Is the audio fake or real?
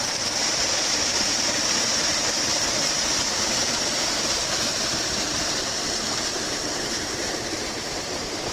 fake